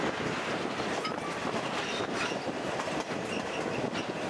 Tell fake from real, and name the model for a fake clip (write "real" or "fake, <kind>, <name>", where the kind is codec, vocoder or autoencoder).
real